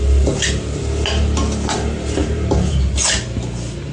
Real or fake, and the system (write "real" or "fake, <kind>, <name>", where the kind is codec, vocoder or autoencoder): real